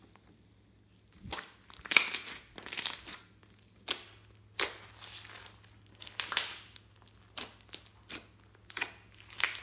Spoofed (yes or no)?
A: no